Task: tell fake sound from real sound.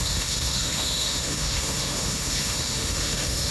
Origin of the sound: fake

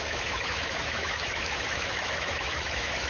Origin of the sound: fake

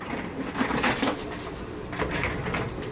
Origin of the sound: real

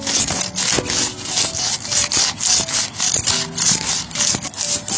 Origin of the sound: real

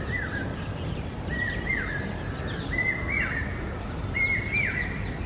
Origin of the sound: real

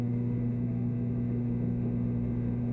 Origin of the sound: fake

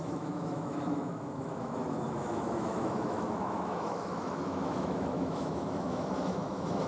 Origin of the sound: fake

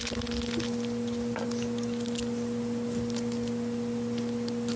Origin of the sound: real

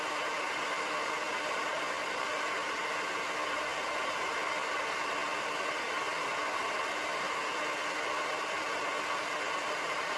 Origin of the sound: real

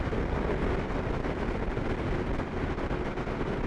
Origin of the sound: real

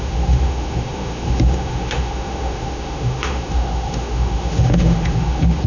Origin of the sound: fake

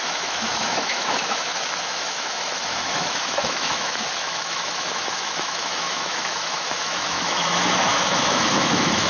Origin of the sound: fake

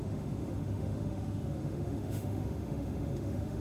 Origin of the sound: fake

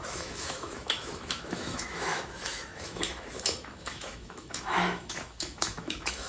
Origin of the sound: fake